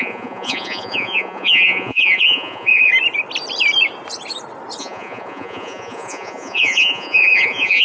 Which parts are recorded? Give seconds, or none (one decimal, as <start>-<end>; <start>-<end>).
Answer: 2.9-4.8

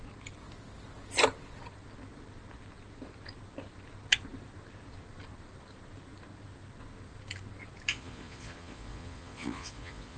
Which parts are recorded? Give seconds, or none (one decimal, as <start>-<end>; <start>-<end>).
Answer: 0.0-7.9

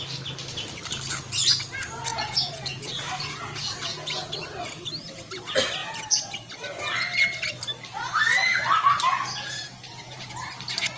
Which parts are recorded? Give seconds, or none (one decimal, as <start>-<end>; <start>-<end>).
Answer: 0.0-2.1; 4.5-5.8; 6.5-9.1; 10.3-11.0

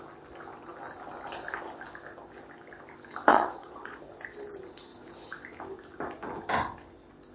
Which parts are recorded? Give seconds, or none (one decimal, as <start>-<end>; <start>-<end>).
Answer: 0.0-3.3; 4.0-7.3